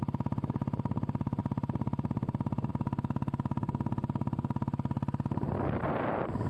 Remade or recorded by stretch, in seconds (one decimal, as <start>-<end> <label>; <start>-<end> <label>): 0.0-6.5 recorded